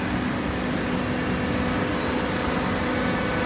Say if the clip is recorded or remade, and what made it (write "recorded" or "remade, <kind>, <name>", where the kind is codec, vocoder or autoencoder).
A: recorded